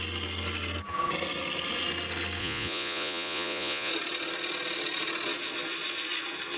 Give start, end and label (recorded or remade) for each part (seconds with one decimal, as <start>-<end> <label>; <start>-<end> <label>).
0.0-2.4 recorded; 2.4-3.9 remade; 3.9-6.6 recorded